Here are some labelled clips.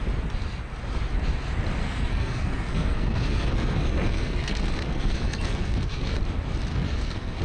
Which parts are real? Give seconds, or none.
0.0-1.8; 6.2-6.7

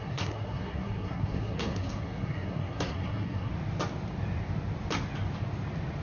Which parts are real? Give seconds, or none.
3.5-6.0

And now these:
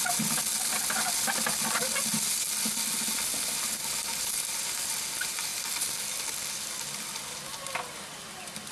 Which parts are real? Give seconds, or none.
0.0-8.7

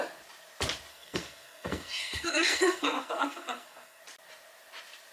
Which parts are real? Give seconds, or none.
0.0-0.9; 4.0-5.1